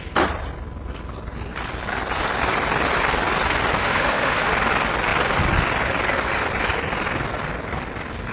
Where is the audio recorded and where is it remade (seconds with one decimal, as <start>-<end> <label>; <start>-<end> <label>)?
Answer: 0.0-3.8 recorded; 3.8-4.5 remade; 4.5-8.3 recorded